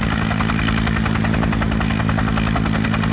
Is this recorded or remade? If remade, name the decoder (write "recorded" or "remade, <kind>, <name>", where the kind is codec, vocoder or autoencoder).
recorded